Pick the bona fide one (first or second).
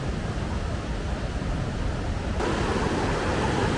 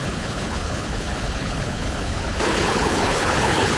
first